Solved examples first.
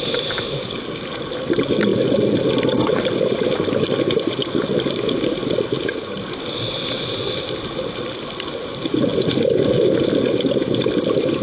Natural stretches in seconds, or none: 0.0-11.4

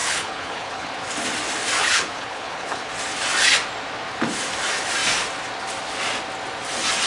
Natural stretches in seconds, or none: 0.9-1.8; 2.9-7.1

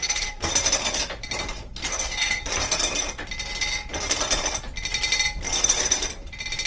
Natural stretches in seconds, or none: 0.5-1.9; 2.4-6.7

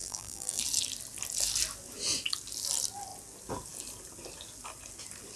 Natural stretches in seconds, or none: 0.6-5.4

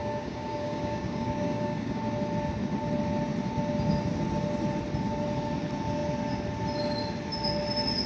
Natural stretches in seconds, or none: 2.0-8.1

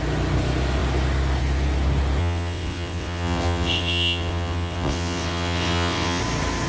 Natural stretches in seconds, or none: 0.0-2.2; 6.2-6.7

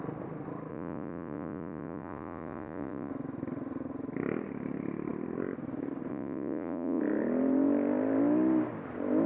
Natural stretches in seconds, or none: 0.0-0.7; 3.1-6.1; 7.0-9.3